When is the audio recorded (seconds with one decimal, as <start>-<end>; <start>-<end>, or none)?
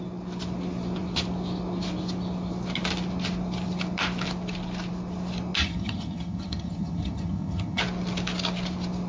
0.0-5.6; 7.8-9.1